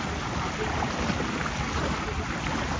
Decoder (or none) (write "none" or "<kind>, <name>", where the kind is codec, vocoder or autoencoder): none